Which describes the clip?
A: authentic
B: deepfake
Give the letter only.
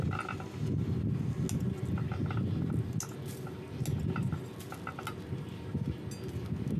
A